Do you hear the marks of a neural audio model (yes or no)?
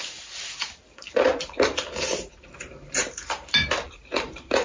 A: yes